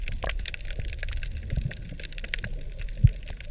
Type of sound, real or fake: real